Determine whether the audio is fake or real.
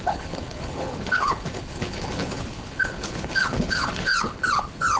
fake